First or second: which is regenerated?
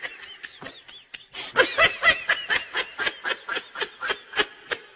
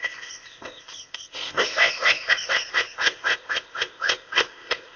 second